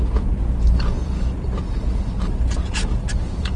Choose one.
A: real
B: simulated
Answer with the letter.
A